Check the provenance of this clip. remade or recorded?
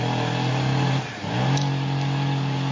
recorded